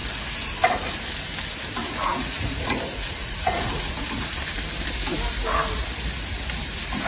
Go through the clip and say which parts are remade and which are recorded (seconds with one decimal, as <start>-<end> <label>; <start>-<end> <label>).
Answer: 0.0-1.8 recorded; 1.8-4.4 remade; 4.4-7.1 recorded